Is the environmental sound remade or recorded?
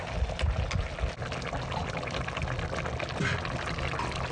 recorded